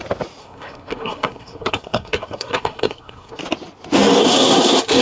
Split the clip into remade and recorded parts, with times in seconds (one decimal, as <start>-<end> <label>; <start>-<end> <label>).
0.0-0.4 recorded; 0.4-3.4 remade; 3.4-4.2 recorded; 4.2-5.0 remade